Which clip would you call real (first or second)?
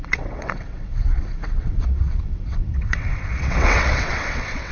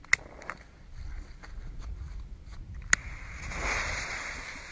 second